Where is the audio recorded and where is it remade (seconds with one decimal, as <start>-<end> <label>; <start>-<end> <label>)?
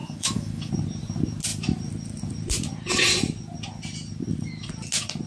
0.0-0.7 remade; 0.7-5.3 recorded